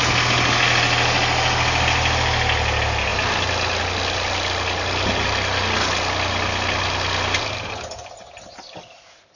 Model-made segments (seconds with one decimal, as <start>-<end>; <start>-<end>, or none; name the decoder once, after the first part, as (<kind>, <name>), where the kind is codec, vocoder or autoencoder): none